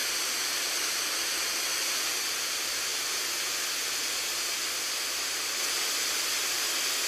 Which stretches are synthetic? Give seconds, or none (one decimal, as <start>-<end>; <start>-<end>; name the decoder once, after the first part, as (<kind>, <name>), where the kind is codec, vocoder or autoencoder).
none